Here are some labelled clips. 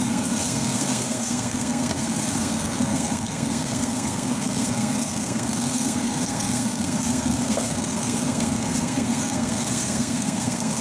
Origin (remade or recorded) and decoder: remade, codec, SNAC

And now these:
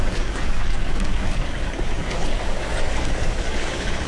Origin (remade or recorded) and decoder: remade, codec, DAC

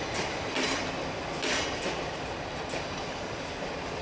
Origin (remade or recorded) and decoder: recorded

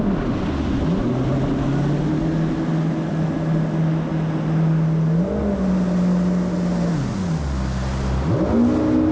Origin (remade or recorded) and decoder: recorded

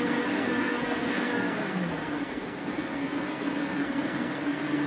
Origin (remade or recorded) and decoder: remade, codec, SNAC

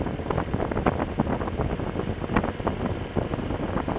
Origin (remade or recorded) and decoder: recorded